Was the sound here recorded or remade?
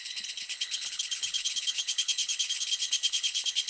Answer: remade